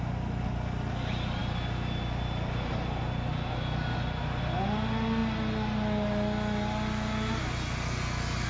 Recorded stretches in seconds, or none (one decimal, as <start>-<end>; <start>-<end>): 0.0-8.5